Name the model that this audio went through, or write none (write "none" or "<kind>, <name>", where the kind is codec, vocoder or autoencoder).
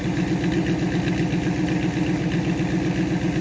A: none